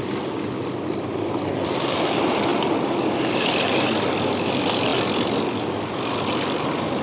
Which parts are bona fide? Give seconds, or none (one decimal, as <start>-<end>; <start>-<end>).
0.0-7.0